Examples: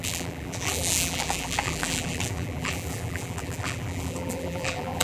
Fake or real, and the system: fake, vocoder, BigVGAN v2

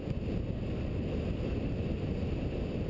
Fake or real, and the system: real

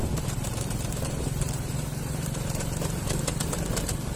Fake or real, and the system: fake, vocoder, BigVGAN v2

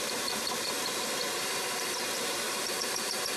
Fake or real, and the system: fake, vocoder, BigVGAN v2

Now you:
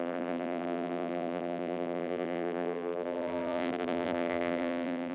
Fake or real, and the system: fake, vocoder, BigVGAN v2